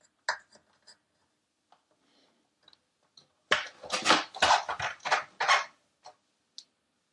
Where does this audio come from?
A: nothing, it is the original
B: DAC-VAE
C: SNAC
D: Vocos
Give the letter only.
A